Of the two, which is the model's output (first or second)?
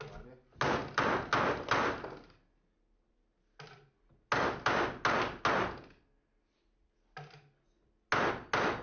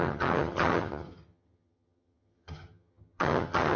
second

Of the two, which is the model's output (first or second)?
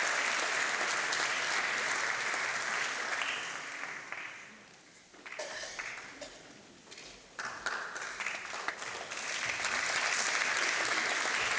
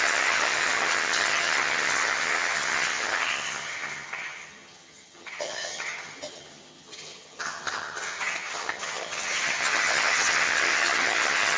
second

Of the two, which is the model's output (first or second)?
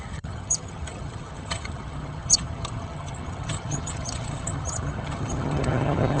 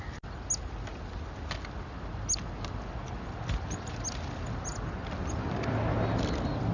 first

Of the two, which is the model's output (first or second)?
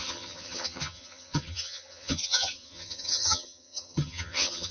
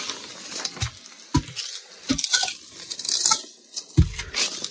first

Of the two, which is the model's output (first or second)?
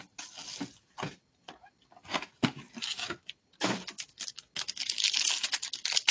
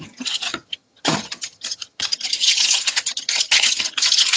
second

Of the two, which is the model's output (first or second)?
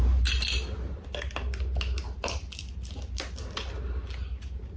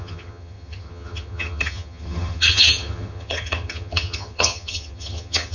second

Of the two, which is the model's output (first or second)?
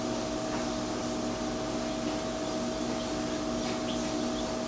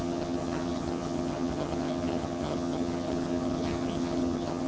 second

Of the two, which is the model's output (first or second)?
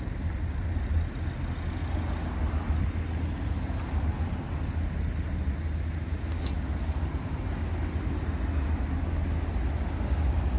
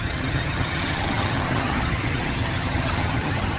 second